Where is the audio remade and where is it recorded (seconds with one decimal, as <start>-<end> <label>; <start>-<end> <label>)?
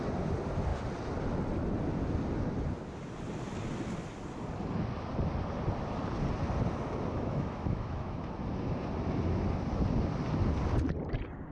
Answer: 0.0-7.1 recorded; 7.1-8.2 remade; 8.2-11.5 recorded